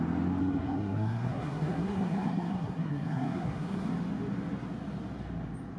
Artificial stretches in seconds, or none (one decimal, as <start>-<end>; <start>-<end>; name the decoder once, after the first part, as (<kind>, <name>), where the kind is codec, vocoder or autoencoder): 0.4-3.9 (codec, SNAC)